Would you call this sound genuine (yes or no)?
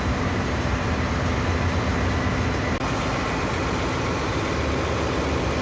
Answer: yes